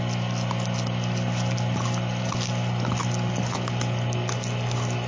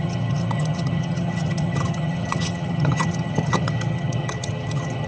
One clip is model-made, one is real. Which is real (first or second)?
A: first